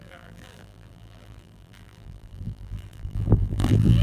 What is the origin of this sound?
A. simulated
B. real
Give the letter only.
A